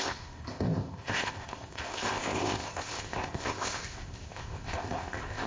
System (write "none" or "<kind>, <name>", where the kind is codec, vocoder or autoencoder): codec, ZipCodec